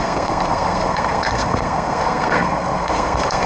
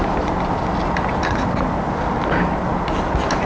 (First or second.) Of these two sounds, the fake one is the first